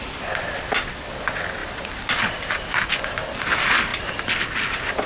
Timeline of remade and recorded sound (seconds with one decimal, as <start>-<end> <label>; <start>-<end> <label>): 0.0-5.1 recorded